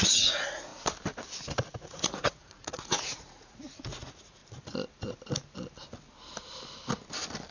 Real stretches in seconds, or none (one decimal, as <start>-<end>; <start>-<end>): 0.7-1.8; 4.4-7.5